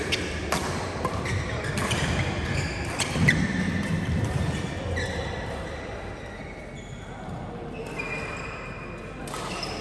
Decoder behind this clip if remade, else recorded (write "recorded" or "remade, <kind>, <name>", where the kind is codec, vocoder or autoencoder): recorded